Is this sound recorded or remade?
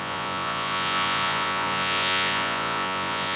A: remade